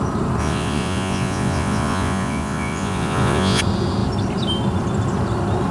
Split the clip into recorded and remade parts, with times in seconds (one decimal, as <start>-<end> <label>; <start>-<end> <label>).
0.0-0.4 recorded; 0.4-3.6 remade; 3.6-5.7 recorded